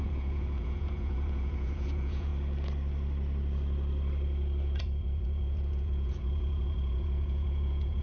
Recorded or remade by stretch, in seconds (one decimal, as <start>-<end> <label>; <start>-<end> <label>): 0.0-2.3 remade; 2.3-4.8 recorded; 4.8-8.0 remade

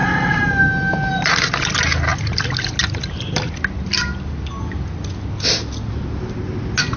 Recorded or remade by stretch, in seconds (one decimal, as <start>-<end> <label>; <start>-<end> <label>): 0.0-7.0 recorded

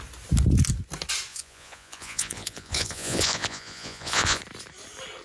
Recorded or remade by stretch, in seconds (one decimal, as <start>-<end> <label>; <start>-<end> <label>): 0.0-1.3 recorded; 1.3-4.4 remade; 4.4-5.2 recorded

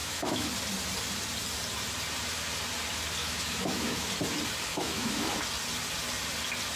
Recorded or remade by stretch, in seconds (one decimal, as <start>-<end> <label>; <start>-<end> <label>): 0.0-0.5 remade; 0.5-3.2 recorded; 3.2-4.1 remade; 4.1-4.7 recorded; 4.7-5.4 remade; 5.4-6.8 recorded

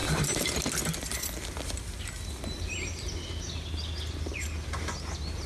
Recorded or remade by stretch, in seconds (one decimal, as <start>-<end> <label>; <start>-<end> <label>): 0.0-5.5 recorded

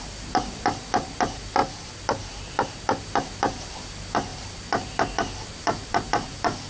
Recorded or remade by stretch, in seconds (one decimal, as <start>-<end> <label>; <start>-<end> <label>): 0.0-6.7 remade